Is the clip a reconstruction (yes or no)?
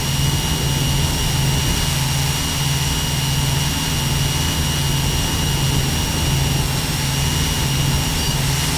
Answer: no